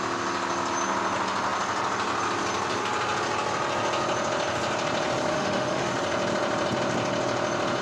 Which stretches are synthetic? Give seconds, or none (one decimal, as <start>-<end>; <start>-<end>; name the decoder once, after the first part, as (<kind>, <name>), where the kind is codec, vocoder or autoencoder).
5.3-5.9 (autoencoder, DAC-VAE)